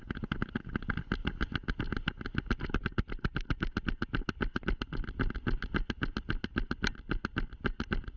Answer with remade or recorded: recorded